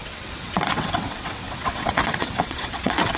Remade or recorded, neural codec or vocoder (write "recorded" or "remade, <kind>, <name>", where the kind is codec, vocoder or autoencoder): remade, vocoder, WaveNeXt